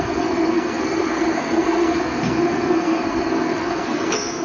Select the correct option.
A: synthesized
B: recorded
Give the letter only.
A